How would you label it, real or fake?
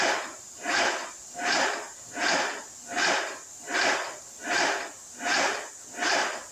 real